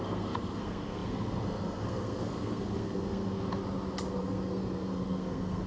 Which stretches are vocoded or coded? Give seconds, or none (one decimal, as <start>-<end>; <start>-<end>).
0.0-3.6; 4.2-5.7